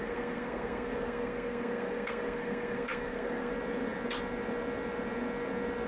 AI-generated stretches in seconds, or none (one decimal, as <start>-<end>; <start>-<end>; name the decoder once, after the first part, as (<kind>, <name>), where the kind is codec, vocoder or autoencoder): 0.0-3.5 (codec, SNAC)